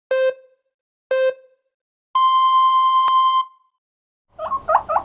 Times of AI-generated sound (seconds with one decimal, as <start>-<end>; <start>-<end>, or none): none